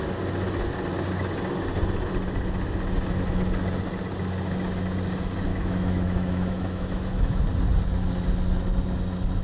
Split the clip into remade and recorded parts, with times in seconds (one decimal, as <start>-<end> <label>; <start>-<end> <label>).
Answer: 0.0-5.5 recorded; 5.5-7.4 remade; 7.4-9.4 recorded